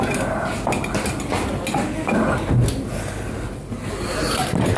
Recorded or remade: recorded